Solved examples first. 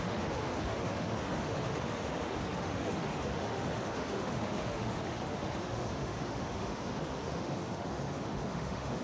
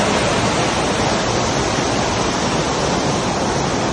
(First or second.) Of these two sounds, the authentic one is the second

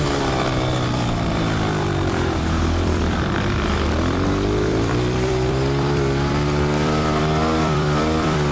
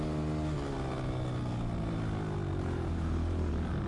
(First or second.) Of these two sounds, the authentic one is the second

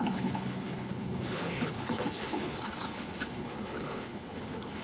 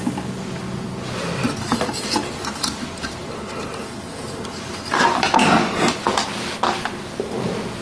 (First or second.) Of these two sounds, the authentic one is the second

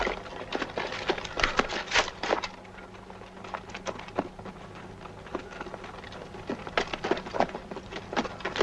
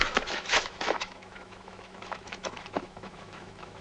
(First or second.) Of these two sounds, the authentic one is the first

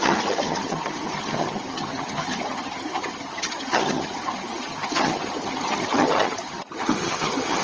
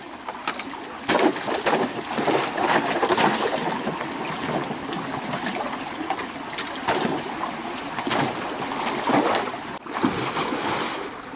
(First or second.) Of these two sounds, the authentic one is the second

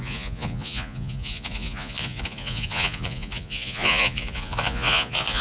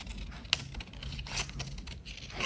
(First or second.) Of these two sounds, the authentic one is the second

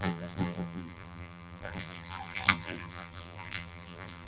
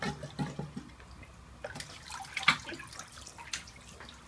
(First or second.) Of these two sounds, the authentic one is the second